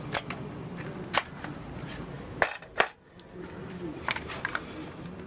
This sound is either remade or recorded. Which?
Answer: recorded